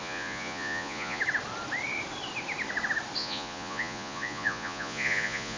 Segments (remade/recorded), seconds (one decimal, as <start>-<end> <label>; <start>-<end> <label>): 0.0-1.2 remade; 1.2-3.2 recorded; 3.2-5.6 remade